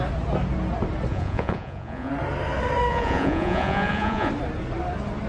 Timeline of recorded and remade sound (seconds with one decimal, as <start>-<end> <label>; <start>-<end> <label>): 0.0-1.1 recorded; 1.1-2.1 remade; 2.1-2.9 recorded; 2.9-4.3 remade; 4.3-5.3 recorded